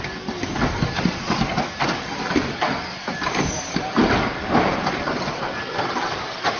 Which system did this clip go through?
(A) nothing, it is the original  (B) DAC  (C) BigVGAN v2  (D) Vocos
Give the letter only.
A